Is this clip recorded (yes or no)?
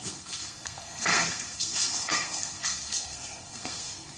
no